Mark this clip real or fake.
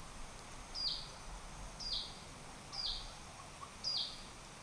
real